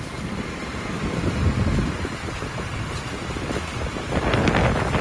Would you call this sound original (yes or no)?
no